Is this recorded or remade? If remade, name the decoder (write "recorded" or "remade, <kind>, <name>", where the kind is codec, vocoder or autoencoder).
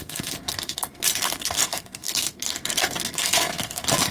remade, codec, SNAC